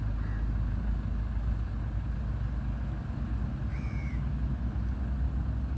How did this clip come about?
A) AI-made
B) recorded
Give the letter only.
B